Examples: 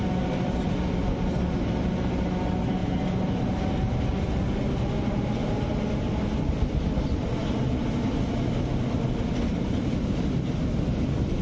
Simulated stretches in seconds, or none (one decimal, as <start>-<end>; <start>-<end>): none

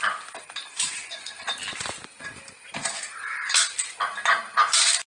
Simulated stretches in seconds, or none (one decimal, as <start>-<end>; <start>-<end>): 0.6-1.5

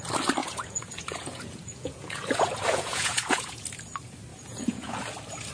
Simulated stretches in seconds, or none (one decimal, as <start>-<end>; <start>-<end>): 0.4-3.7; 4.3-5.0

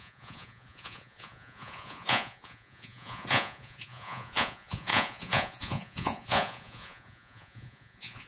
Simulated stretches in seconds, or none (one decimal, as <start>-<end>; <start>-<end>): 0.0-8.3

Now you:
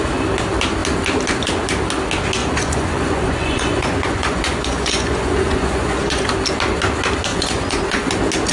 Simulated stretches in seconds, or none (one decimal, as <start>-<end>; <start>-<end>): 2.4-6.3; 7.3-8.1

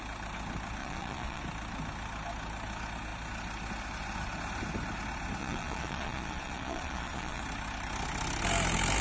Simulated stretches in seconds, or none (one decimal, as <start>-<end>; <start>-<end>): 0.8-1.4; 5.4-7.4

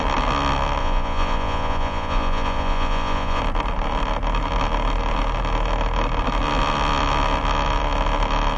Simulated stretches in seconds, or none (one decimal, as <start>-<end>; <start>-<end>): 0.8-3.4